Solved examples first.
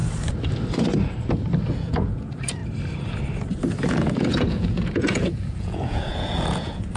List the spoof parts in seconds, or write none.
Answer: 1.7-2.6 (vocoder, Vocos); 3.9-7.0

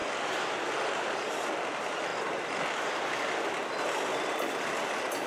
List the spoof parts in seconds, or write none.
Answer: none

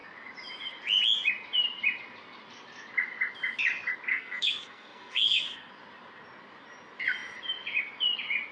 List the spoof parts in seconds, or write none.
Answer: 4.1-5.7 (codec, SNAC)

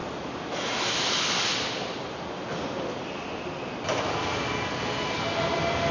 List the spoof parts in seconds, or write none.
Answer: none

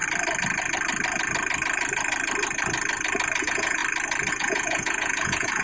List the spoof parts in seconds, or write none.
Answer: 3.4-3.8 (vocoder, Vocos); 4.3-5.6